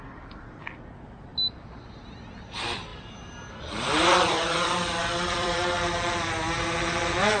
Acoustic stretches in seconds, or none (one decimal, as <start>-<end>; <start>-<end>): 0.0-2.9; 6.3-7.4